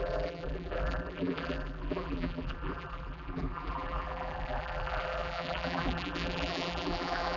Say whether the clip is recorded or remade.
remade